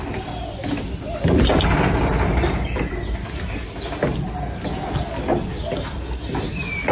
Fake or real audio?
real